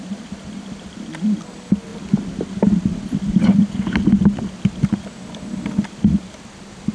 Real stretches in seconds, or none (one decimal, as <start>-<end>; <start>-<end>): 0.0-6.9